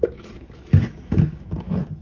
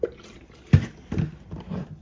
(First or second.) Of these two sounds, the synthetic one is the first